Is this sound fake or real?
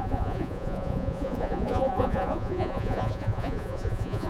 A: fake